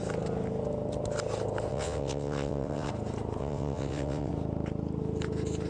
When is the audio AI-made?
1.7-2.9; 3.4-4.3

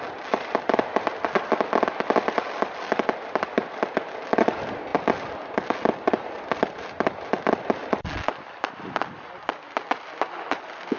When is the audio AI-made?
none

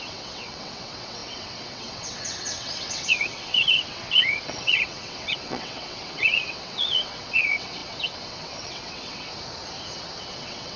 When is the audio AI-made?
0.0-9.3; 10.2-10.8